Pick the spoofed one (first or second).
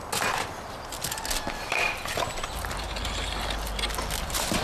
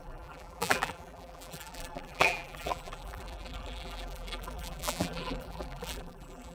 second